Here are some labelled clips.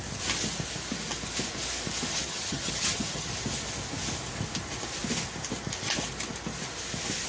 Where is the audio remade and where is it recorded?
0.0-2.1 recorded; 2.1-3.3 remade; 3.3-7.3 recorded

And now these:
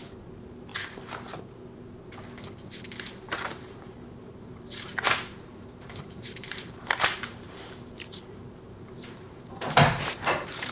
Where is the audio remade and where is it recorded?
0.0-0.7 remade; 0.7-3.3 recorded; 3.3-10.7 remade

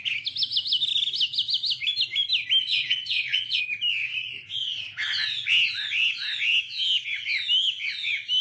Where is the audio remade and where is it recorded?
0.0-2.6 recorded; 2.6-3.6 remade; 3.6-8.4 recorded

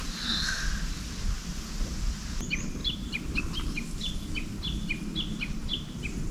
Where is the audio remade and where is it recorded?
0.0-2.8 recorded; 2.8-3.4 remade; 3.4-6.3 recorded